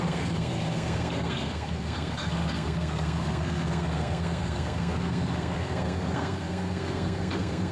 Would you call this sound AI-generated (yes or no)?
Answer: yes